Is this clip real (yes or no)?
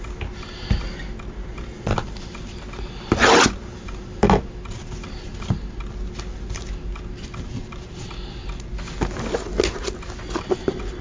yes